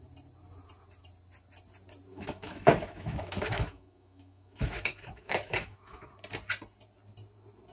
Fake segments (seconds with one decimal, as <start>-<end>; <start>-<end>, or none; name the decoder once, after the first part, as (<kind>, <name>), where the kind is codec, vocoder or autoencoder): 2.1-6.1 (autoencoder, DAC-VAE)